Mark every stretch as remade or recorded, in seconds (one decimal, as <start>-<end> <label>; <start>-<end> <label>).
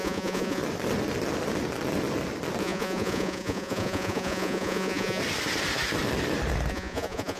0.0-0.6 remade; 0.6-2.6 recorded; 2.6-5.2 remade; 5.2-6.7 recorded; 6.7-7.4 remade